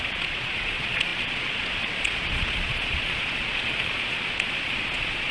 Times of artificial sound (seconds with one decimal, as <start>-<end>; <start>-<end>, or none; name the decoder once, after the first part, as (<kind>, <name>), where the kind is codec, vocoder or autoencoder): 0.0-5.3 (vocoder, Vocos)